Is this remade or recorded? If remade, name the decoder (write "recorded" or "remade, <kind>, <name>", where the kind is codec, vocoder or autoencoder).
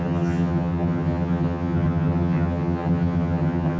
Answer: remade, vocoder, HiFi-GAN